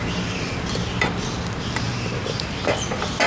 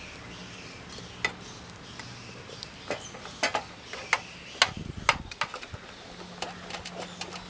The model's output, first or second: first